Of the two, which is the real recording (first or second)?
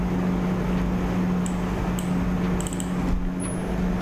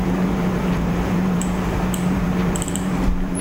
first